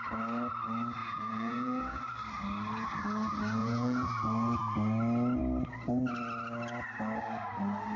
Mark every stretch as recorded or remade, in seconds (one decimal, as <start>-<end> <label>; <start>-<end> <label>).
0.0-1.0 recorded; 1.0-2.0 remade; 2.0-3.6 recorded; 3.6-4.1 remade; 4.1-8.0 recorded